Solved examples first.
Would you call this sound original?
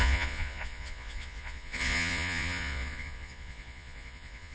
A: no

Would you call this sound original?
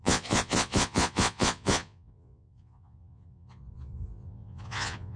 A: no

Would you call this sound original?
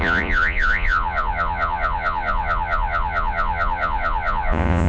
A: no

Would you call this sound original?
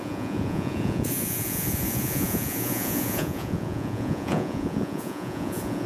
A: no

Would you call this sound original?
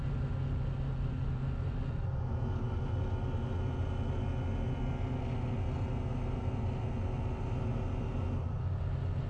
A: yes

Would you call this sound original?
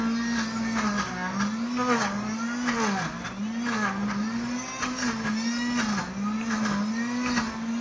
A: yes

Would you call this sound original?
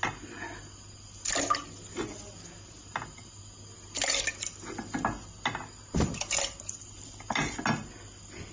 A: yes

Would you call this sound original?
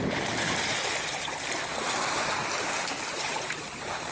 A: yes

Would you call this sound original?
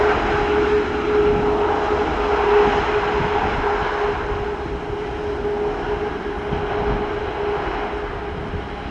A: yes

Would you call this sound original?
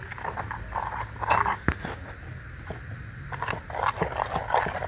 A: yes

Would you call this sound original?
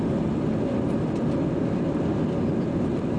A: yes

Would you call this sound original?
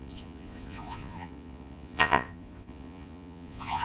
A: no